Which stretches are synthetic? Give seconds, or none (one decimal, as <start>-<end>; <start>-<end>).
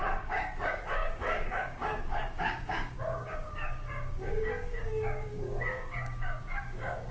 0.0-7.1